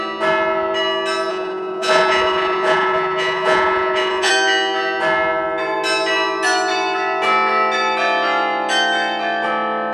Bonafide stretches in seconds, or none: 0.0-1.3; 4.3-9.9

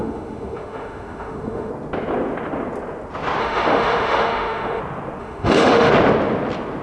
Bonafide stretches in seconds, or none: 1.7-3.4; 4.8-5.2; 5.9-6.8